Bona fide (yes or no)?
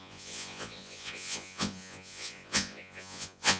no